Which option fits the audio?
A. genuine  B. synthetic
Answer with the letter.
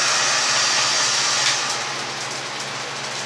A